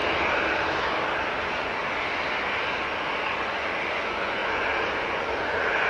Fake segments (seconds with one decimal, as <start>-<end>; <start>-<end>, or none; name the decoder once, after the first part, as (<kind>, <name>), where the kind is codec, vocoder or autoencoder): 1.4-1.8 (vocoder, Vocos); 3.3-5.9